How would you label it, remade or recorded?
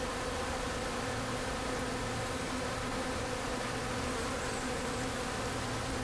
recorded